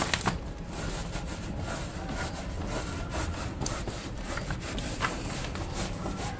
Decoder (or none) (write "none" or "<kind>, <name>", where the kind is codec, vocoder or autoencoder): none